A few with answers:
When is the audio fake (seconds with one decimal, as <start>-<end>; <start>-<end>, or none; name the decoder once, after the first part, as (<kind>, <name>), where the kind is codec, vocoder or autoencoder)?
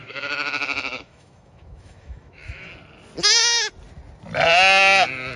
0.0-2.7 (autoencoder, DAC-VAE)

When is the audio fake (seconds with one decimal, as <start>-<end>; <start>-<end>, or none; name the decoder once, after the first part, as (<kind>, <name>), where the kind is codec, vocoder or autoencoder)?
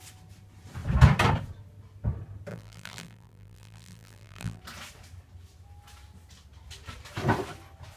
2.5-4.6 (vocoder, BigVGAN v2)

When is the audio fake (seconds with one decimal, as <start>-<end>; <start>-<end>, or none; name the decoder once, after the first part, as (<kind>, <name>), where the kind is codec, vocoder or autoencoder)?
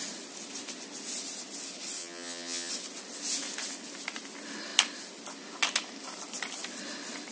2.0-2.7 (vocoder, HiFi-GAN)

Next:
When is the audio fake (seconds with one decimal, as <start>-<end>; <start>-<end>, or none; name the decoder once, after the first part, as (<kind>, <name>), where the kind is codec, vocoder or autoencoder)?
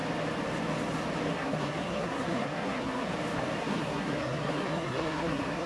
1.3-3.1 (codec, SNAC); 3.6-5.7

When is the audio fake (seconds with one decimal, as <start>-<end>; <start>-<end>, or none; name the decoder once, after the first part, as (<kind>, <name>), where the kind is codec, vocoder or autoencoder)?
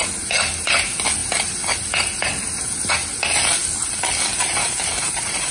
4.3-5.5 (vocoder, BigVGAN v2)